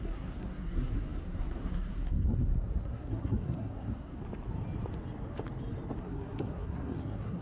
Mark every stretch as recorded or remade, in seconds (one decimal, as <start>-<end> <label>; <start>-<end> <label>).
0.0-4.1 remade; 4.1-6.0 recorded; 6.0-7.4 remade

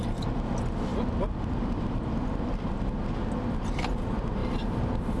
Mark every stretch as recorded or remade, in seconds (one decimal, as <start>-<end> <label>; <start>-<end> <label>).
0.0-4.4 recorded; 4.4-5.2 remade

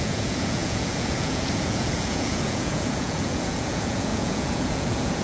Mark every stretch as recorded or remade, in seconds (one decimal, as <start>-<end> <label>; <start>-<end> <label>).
0.0-5.2 remade

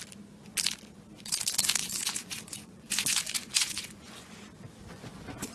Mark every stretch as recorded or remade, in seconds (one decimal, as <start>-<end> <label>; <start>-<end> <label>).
0.0-1.8 recorded; 1.8-4.3 remade; 4.3-4.9 recorded; 4.9-5.5 remade

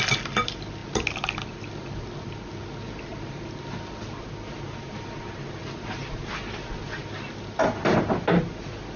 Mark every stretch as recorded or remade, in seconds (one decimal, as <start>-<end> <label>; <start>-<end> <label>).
0.0-9.0 recorded

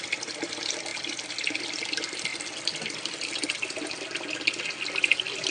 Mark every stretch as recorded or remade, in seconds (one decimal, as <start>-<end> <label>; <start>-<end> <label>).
0.0-5.5 recorded